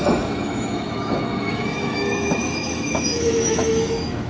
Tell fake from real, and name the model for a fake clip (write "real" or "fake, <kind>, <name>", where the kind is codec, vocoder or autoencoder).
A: fake, autoencoder, DAC-VAE